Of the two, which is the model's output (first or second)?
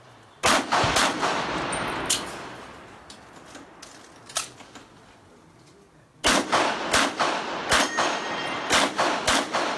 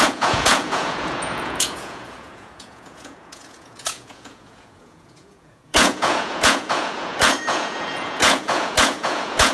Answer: second